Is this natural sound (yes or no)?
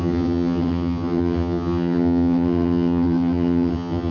no